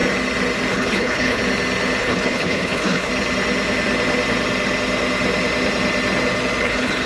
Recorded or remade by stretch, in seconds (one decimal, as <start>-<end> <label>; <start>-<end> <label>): 0.0-0.7 recorded; 0.7-1.4 remade; 1.4-2.0 recorded; 2.0-3.1 remade; 3.1-6.6 recorded; 6.6-7.1 remade